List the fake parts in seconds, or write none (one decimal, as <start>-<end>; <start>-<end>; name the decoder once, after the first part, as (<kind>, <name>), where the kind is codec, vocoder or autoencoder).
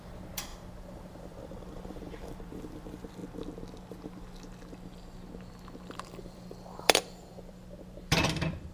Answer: 0.0-0.5 (vocoder, BigVGAN v2); 1.0-3.2; 5.9-8.7